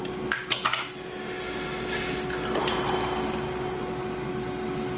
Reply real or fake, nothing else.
real